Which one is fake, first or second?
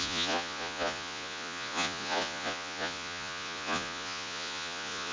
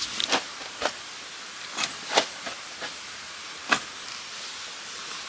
first